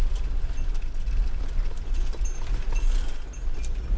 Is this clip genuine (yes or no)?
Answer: yes